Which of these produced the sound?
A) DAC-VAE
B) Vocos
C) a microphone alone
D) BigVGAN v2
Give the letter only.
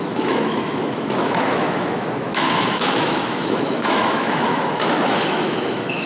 A